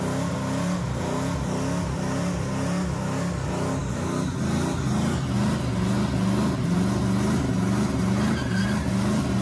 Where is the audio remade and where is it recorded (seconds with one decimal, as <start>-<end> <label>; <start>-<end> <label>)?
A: 0.0-9.4 recorded